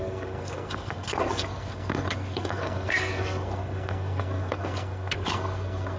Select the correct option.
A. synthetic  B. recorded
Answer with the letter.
A